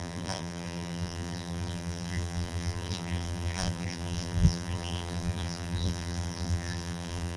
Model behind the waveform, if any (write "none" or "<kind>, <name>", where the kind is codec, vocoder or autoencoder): vocoder, BigVGAN v2